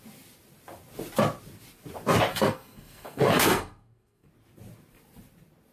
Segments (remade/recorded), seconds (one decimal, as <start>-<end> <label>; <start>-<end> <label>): 0.0-2.3 recorded; 2.3-4.3 remade; 4.3-5.7 recorded